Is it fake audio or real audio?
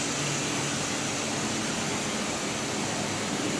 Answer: real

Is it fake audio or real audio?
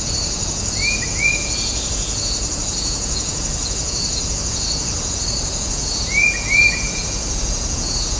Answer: fake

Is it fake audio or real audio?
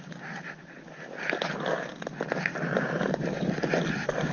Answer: real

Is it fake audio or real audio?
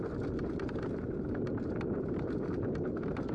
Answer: real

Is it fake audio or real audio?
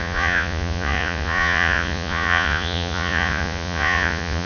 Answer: fake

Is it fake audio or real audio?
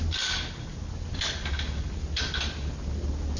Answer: real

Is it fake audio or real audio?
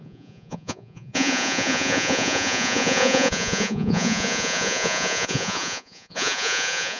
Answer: fake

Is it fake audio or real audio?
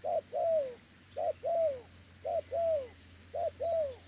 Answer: real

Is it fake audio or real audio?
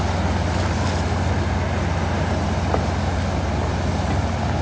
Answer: real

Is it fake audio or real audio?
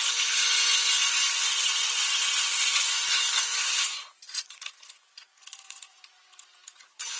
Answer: fake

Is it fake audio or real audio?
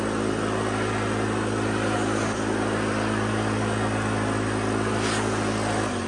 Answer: real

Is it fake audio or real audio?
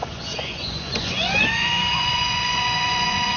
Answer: fake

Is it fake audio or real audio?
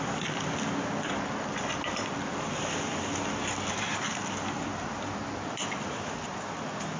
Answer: real